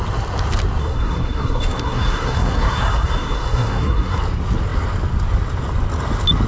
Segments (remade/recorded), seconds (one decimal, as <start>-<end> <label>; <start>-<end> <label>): 0.0-0.8 recorded; 0.8-4.2 remade; 4.2-6.5 recorded